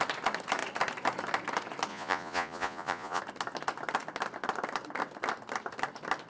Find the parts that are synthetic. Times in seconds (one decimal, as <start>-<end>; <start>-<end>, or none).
1.9-3.2